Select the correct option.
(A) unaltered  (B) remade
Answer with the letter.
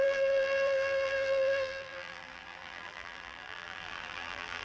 B